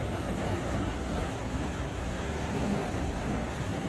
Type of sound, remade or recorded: remade